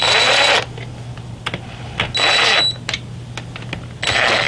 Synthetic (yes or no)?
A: no